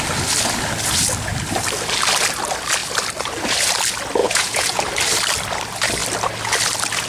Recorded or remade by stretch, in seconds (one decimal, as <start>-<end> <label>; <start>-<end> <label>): 0.0-4.2 recorded; 4.2-4.8 remade; 4.8-7.1 recorded